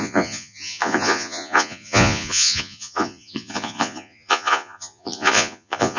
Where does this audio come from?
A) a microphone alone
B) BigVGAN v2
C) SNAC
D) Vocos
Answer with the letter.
D